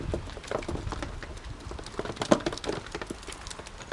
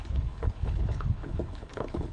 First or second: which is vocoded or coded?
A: second